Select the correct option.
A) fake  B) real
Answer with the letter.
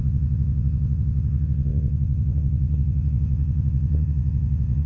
A